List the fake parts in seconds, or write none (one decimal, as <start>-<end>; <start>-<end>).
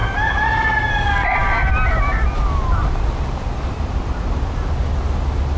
none